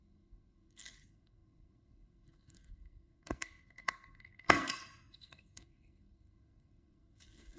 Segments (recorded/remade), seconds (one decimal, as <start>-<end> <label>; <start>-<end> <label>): 0.0-7.6 remade